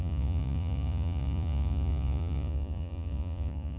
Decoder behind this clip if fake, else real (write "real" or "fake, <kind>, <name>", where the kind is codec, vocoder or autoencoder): fake, vocoder, Vocos